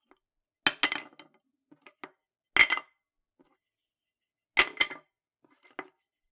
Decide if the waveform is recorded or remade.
recorded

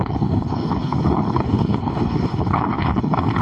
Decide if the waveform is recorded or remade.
remade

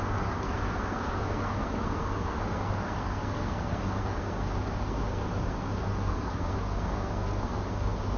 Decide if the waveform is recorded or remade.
remade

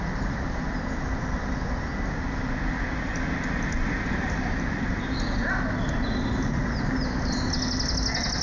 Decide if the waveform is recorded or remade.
recorded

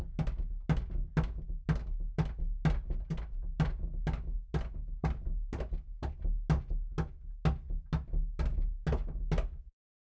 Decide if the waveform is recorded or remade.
recorded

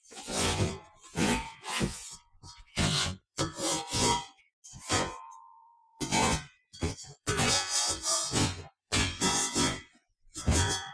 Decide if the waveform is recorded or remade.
remade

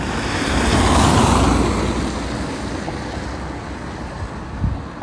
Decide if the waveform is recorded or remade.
recorded